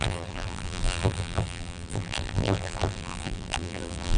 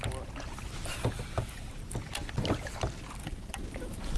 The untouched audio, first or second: second